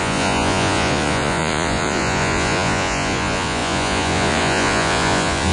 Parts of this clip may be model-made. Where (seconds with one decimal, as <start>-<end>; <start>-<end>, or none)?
0.0-5.5